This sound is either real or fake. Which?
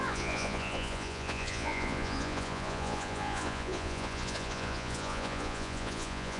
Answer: fake